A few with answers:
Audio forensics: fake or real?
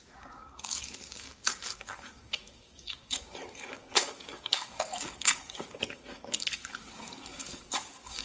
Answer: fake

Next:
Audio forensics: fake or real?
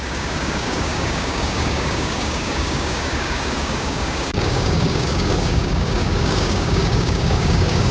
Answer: fake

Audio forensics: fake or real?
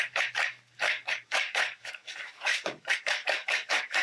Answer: fake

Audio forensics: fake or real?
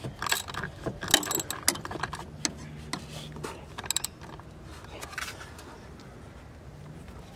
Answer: real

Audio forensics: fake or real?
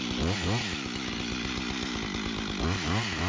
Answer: real